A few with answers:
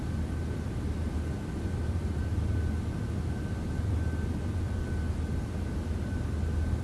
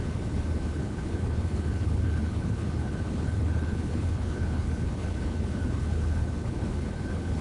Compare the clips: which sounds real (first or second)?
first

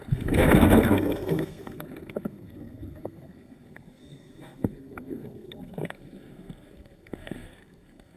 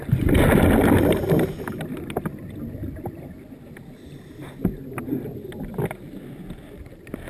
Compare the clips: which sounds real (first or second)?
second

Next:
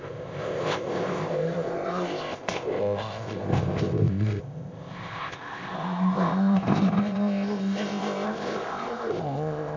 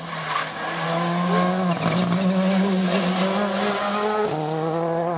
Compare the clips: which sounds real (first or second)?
second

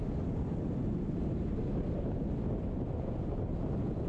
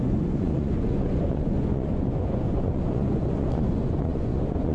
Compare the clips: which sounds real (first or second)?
first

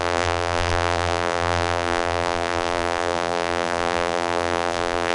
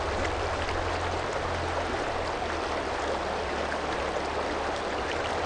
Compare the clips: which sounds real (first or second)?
second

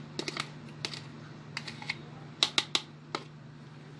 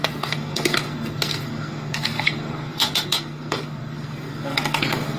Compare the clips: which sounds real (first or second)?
first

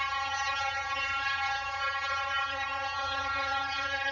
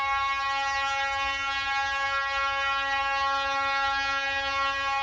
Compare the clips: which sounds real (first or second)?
second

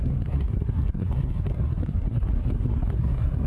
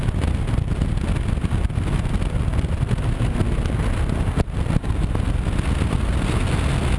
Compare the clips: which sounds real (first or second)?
second